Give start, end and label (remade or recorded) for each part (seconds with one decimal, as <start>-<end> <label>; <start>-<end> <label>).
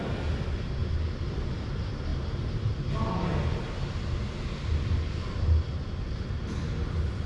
0.0-7.3 recorded